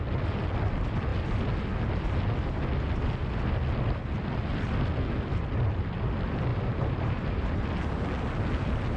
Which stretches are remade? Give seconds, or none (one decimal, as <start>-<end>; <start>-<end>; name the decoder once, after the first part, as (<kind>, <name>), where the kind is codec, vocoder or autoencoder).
6.5-7.7 (vocoder, BigVGAN v2)